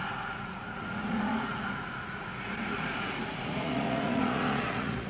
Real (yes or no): no